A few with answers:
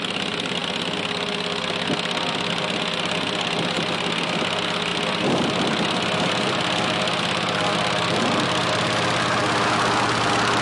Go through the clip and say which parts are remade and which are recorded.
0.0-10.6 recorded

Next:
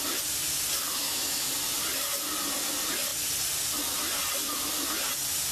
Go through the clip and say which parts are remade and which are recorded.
0.0-1.0 recorded; 1.0-1.5 remade; 1.5-5.5 recorded